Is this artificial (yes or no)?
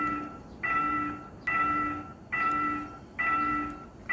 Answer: no